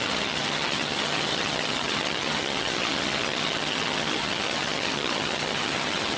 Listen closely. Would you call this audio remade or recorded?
remade